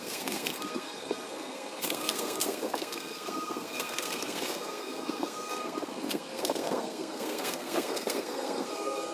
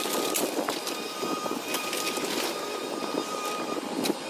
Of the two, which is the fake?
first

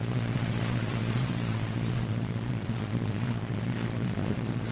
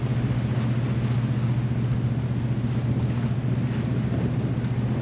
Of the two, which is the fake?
first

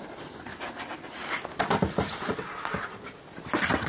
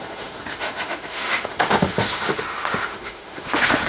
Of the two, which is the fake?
second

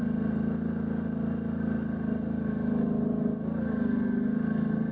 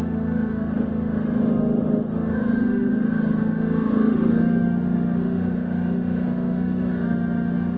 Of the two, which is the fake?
second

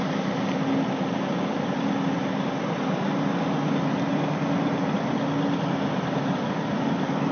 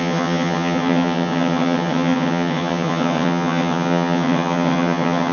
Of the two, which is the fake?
second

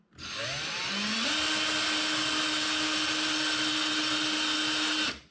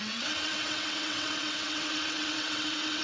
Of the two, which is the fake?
second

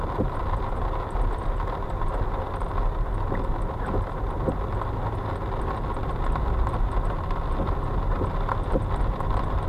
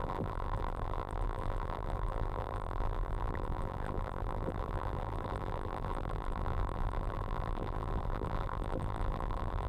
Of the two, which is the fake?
second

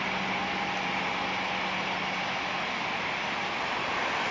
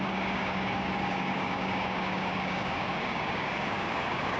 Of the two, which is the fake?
second